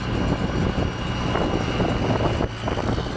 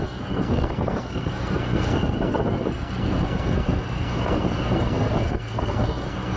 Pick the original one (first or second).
first